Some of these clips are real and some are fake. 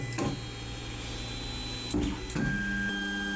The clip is real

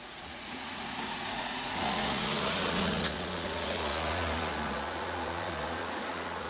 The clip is fake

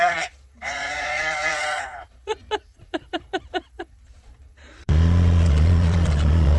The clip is fake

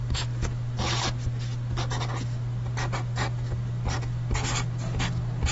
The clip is real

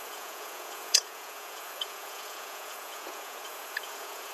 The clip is fake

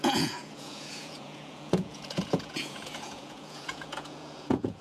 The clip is fake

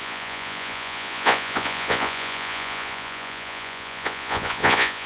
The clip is fake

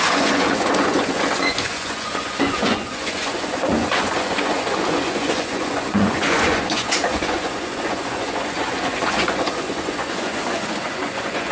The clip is fake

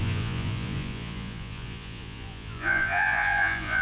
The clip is fake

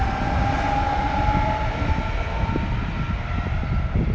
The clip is real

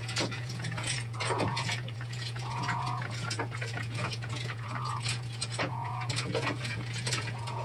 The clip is fake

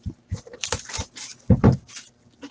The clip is real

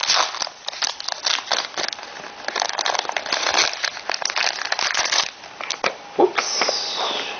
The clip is real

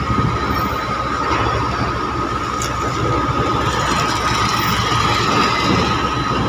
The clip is real